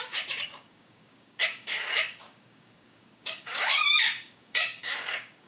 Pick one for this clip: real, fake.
fake